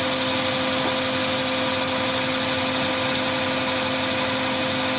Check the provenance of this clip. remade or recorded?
recorded